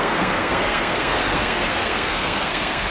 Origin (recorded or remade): remade